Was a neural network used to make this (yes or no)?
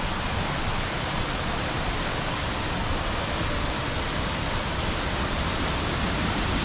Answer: yes